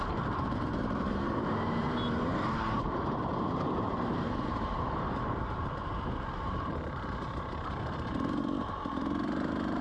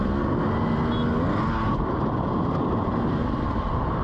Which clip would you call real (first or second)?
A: second